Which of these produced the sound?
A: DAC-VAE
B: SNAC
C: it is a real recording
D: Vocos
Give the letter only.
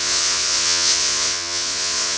D